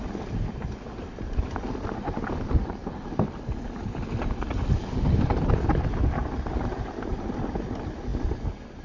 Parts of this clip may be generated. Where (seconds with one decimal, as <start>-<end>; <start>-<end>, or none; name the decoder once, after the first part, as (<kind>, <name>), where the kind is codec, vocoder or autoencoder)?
none